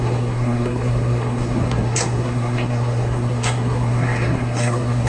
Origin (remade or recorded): remade